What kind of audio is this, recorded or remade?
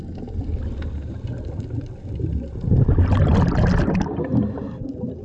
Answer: recorded